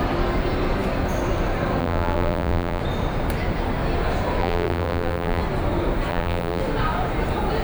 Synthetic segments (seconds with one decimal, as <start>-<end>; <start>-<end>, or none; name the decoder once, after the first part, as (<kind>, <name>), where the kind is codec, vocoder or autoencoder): 1.8-2.8 (vocoder, BigVGAN v2); 4.4-5.4; 6.1-6.6